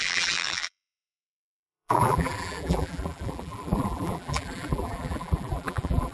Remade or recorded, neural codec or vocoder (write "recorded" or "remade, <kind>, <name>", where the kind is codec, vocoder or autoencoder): remade, vocoder, BigVGAN v2